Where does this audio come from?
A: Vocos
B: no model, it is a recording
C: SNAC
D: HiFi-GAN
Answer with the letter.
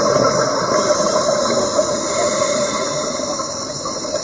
B